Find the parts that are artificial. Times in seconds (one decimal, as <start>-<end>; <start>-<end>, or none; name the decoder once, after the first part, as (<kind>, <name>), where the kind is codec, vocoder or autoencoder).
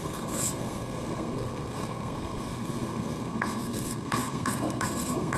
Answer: 0.0-5.4 (codec, SNAC)